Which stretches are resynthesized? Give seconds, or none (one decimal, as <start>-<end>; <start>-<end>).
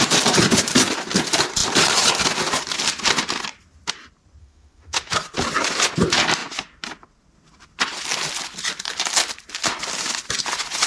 4.4-5.1